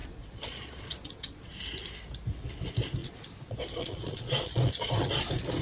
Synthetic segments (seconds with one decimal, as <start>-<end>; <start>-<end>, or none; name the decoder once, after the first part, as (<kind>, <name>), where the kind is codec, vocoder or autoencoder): 0.0-1.6 (vocoder, Vocos); 3.0-5.1